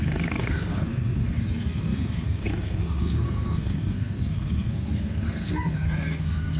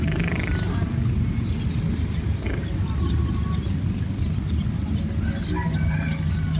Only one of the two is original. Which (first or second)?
second